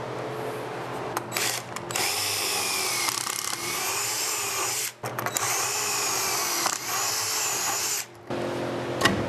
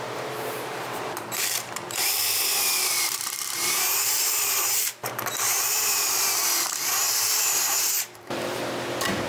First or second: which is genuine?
first